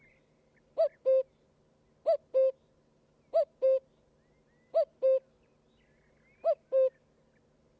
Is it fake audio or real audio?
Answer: real